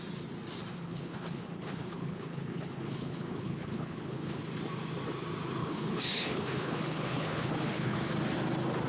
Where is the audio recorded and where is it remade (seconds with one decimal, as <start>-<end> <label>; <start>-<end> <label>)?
0.0-0.7 recorded; 0.7-4.4 remade; 4.4-5.6 recorded; 5.6-8.1 remade; 8.1-8.9 recorded